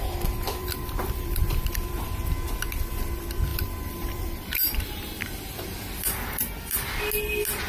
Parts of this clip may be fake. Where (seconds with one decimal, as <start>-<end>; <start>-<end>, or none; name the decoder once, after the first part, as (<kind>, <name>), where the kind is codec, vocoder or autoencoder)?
0.6-1.7 (vocoder, BigVGAN v2); 3.5-7.0